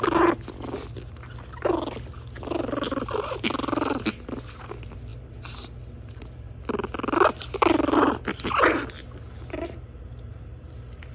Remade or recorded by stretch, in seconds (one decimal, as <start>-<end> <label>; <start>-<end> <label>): 0.0-11.1 recorded